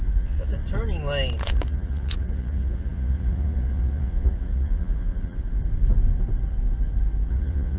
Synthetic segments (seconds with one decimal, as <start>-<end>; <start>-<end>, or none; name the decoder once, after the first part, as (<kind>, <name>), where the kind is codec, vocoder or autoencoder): 0.0-0.6 (vocoder, Vocos); 1.4-5.4; 7.3-7.8